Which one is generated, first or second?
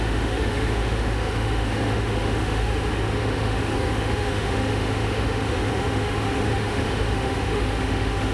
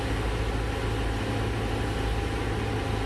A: first